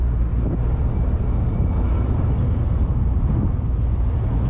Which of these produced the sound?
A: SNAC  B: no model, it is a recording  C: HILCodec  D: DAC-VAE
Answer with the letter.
B